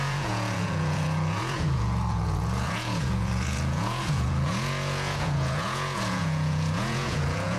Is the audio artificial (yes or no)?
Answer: yes